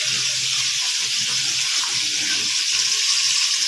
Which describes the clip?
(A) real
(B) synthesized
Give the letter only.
A